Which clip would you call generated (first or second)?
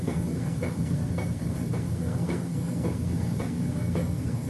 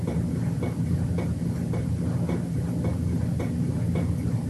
first